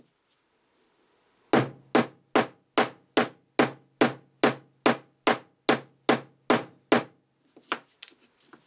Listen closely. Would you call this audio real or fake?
real